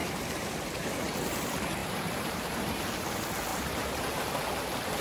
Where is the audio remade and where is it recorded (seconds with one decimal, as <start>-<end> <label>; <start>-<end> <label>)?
0.0-0.9 remade; 0.9-1.8 recorded; 1.8-2.8 remade; 2.8-3.5 recorded; 3.5-4.3 remade; 4.3-5.0 recorded